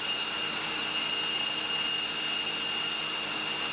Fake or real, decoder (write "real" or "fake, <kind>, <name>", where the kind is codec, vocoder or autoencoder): real